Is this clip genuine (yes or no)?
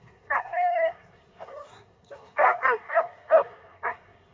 no